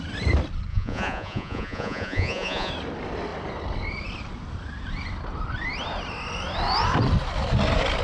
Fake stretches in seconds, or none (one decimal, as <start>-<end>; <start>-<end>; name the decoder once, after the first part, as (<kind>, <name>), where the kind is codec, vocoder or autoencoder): 0.7-2.7 (vocoder, Vocos)